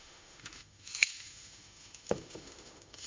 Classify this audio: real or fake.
fake